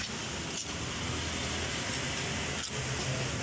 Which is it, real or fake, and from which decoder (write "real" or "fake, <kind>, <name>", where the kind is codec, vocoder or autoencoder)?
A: real